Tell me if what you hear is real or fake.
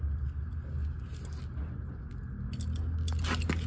real